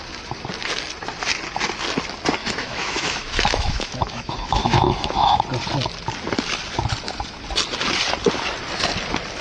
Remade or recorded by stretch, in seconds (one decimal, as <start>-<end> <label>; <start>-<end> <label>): 0.0-2.4 recorded; 2.4-5.4 remade; 5.4-9.4 recorded